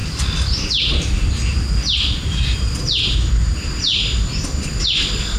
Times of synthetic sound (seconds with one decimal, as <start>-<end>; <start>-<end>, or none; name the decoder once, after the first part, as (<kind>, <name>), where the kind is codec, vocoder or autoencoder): none